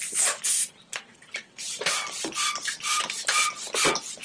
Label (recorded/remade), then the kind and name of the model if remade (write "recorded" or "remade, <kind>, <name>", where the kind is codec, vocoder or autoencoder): remade, vocoder, BigVGAN v2